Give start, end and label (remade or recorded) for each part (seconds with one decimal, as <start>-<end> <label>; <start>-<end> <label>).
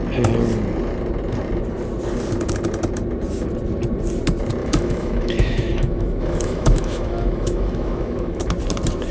0.0-4.6 recorded; 4.6-8.4 remade; 8.4-9.1 recorded